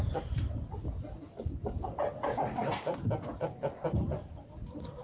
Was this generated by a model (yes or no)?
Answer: no